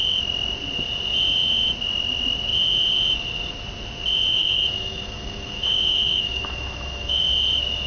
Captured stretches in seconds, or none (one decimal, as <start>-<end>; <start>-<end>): 0.0-4.3; 7.2-7.9